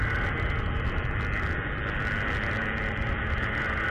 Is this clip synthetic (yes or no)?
no